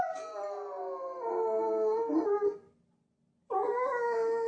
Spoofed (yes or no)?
no